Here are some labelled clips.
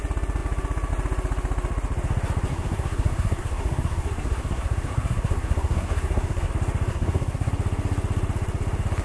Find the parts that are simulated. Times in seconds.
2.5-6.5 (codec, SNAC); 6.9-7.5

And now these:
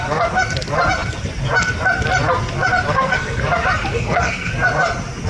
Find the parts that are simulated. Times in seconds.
2.9-3.4 (codec, SNAC); 3.9-4.5

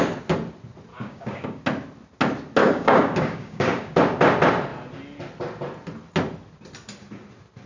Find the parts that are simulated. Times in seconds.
0.9-1.6 (codec, DAC); 2.6-3.9

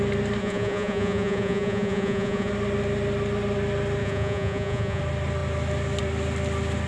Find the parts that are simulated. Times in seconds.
0.4-2.5 (vocoder, Vocos); 4.0-5.0

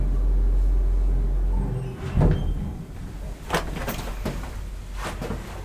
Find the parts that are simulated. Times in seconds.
2.4-4.7 (vocoder, BigVGAN v2)

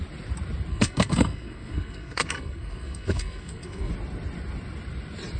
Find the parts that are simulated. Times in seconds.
0.7-3.9 (codec, SNAC)

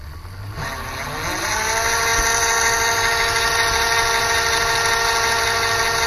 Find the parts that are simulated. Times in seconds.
none

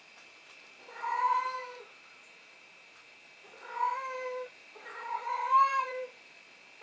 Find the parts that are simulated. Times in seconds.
1.6-3.4 (vocoder, BigVGAN v2); 4.6-6.3